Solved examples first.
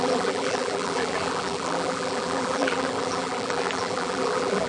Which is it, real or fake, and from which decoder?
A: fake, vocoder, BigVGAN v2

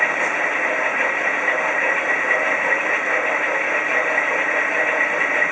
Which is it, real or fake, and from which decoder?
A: real